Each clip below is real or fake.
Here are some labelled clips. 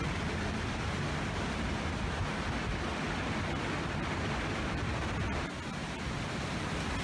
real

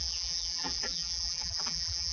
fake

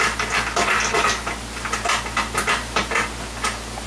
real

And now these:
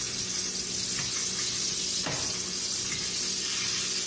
real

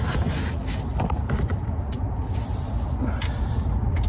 real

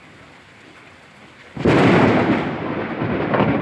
real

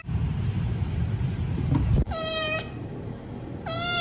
fake